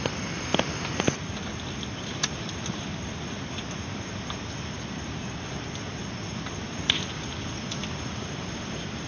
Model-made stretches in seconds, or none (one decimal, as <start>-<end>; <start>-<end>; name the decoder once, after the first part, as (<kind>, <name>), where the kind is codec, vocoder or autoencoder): none